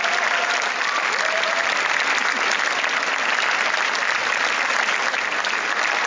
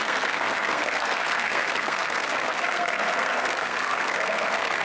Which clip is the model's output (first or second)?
second